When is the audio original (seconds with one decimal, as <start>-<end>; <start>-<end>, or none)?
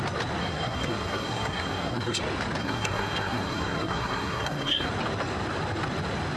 0.0-0.4; 2.2-2.6; 4.9-6.4